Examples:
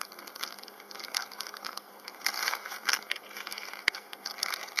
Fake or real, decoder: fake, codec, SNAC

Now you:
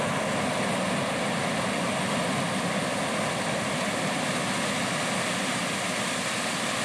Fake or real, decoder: real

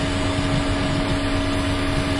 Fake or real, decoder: real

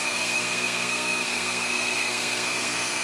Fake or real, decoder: fake, codec, SNAC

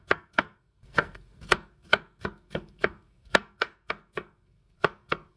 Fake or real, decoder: fake, codec, SNAC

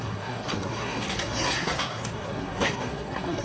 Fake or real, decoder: fake, codec, SNAC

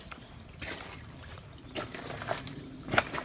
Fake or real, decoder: real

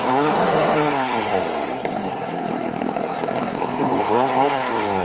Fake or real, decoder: fake, codec, SNAC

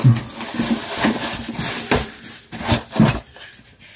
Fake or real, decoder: real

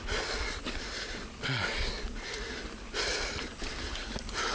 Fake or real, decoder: real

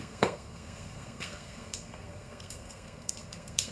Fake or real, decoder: fake, codec, SNAC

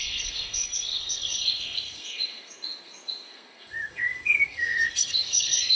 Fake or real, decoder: fake, codec, SNAC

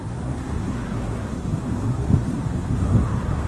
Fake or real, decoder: fake, codec, SNAC